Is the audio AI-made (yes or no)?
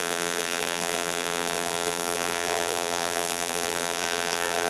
yes